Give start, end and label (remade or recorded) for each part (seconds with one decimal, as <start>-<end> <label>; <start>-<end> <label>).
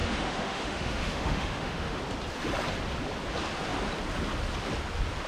0.0-2.0 remade; 2.0-5.3 recorded